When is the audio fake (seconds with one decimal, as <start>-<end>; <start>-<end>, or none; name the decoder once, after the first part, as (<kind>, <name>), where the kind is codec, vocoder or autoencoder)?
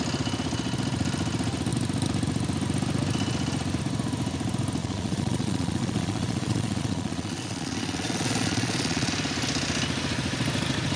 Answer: 4.8-9.1 (vocoder, Vocos)